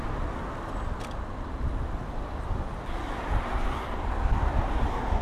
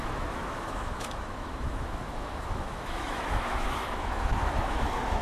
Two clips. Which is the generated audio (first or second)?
second